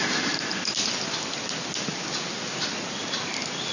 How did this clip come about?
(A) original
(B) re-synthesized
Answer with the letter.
A